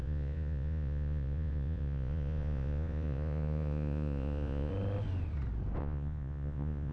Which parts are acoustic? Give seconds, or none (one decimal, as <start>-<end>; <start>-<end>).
4.7-5.8